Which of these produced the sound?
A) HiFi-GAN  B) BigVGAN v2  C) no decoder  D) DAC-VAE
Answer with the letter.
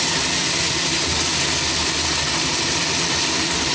C